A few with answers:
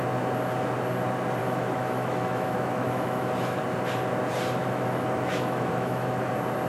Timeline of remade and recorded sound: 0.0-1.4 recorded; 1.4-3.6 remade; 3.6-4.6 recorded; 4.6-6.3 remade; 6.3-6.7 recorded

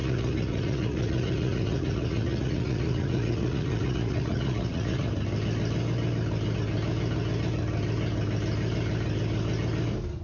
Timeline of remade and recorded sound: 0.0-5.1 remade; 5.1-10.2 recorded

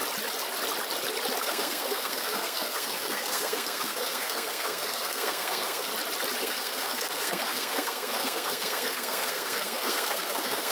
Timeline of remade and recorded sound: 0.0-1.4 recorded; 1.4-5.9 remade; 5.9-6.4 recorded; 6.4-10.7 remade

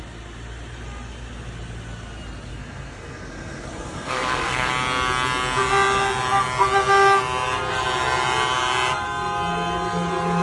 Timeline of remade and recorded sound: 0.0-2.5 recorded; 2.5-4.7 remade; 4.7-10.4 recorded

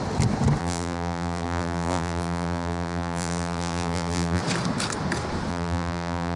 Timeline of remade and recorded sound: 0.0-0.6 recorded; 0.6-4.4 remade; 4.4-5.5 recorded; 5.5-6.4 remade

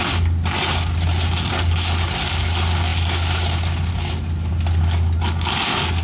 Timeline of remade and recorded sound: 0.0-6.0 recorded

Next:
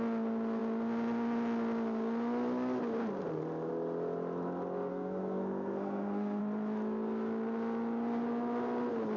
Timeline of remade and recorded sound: 0.0-4.9 recorded; 4.9-6.4 remade; 6.4-9.2 recorded